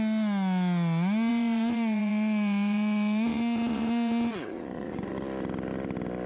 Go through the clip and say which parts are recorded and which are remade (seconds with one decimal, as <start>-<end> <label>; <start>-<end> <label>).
0.0-1.3 recorded; 1.3-5.1 remade; 5.1-6.3 recorded